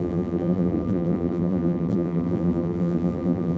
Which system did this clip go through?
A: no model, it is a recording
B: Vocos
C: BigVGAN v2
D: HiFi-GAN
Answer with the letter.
C